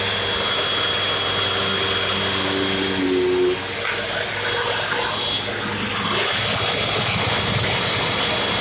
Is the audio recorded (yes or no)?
yes